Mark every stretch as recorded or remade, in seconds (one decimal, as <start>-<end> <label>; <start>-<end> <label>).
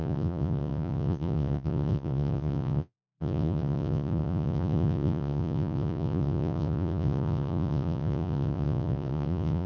0.0-9.7 remade